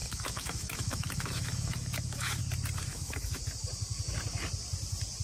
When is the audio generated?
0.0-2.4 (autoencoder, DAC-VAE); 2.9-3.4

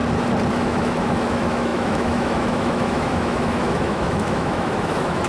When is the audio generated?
0.5-5.3 (autoencoder, DAC-VAE)